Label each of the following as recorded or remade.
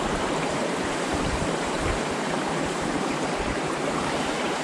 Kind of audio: remade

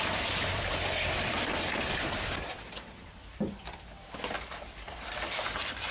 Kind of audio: remade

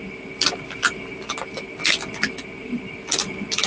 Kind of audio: recorded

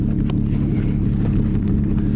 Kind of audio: remade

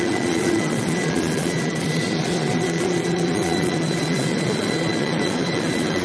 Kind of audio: remade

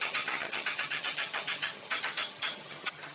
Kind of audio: remade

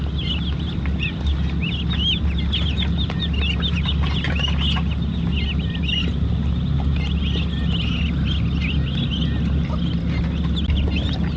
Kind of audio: recorded